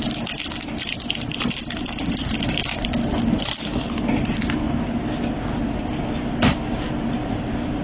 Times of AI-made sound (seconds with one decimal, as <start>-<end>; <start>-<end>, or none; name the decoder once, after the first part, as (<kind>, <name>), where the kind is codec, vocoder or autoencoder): none